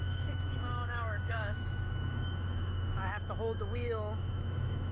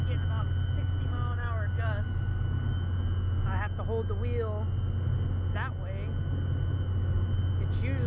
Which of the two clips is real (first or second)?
second